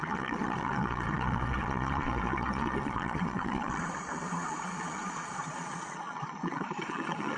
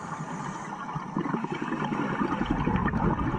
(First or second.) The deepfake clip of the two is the first